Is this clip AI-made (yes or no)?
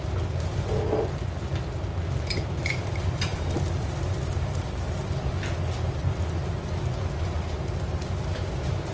no